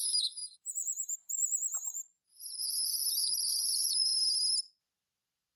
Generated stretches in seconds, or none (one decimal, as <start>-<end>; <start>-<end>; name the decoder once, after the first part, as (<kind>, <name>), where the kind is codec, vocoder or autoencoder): 0.0-4.1 (vocoder, BigVGAN v2); 4.8-5.6